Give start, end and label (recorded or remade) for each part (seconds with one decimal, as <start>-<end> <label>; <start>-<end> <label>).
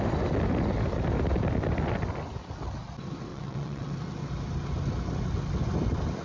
0.0-3.3 recorded; 3.3-3.9 remade; 3.9-6.2 recorded